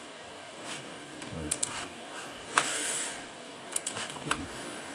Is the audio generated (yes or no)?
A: yes